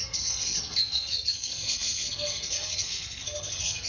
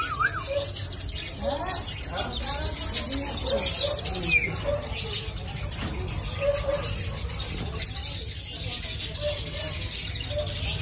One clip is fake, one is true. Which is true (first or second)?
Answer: second